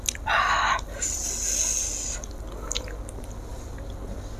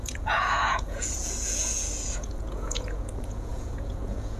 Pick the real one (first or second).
first